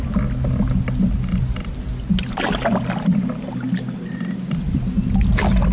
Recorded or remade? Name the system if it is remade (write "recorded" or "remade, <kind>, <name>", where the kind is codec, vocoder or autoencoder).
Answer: recorded